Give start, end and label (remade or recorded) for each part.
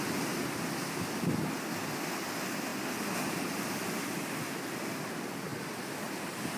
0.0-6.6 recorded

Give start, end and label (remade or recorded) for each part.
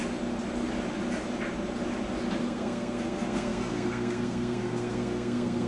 0.0-2.4 recorded; 2.4-5.7 remade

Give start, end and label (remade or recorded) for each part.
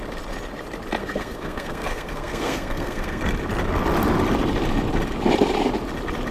0.0-1.0 recorded; 1.0-3.2 remade; 3.2-6.3 recorded